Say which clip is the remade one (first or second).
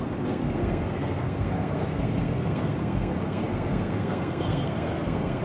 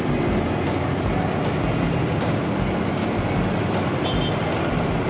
first